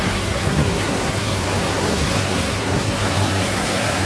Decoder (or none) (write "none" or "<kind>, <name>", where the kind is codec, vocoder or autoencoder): codec, SNAC